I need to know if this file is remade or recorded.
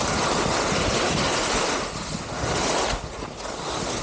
recorded